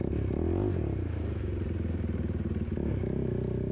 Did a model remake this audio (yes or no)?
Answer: no